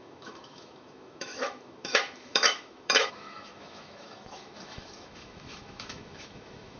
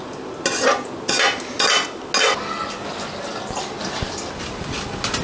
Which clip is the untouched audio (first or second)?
second